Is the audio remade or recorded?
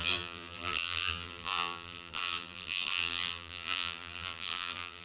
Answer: remade